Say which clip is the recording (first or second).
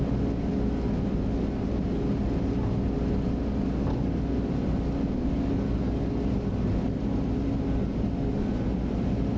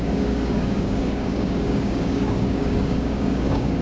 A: first